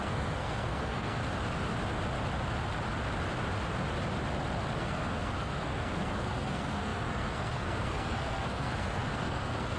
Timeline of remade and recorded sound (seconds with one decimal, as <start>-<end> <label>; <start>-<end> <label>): 0.0-1.2 remade; 1.2-4.8 recorded; 4.8-9.8 remade

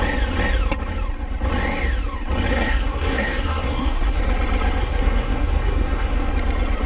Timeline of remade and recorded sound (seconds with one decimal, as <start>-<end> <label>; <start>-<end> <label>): 0.0-2.5 recorded; 2.5-4.2 remade; 4.2-4.8 recorded; 4.8-6.3 remade; 6.3-6.9 recorded